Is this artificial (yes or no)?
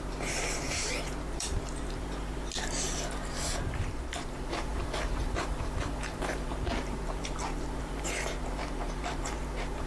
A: yes